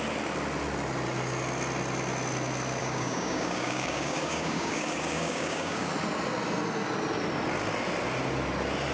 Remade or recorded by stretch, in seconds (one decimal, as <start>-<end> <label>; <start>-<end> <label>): 0.0-2.8 recorded; 2.8-5.9 remade; 5.9-8.9 recorded

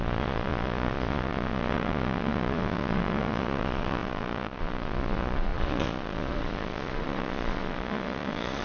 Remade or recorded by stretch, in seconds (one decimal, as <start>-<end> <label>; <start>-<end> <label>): 0.0-8.6 remade

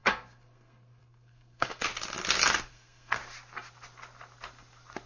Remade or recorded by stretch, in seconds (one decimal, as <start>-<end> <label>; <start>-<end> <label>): 0.0-1.9 remade; 1.9-2.7 recorded; 2.7-3.2 remade; 3.2-5.1 recorded

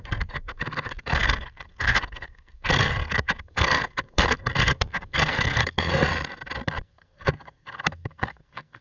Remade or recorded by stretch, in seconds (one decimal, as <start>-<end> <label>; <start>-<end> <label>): 0.0-6.1 remade; 6.1-6.8 recorded; 6.8-8.8 remade